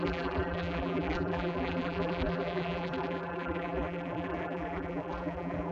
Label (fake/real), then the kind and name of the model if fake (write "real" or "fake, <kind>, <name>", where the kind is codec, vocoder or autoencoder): fake, vocoder, BigVGAN v2